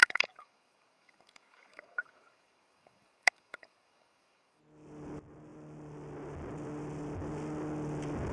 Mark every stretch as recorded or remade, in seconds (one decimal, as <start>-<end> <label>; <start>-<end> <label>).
0.0-4.6 remade; 4.6-8.3 recorded